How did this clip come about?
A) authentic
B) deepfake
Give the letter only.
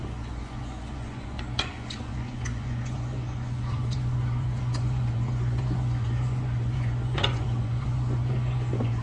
B